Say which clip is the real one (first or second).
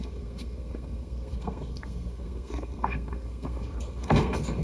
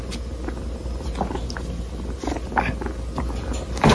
second